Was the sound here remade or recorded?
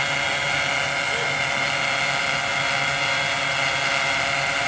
recorded